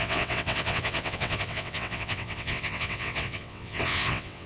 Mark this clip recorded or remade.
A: remade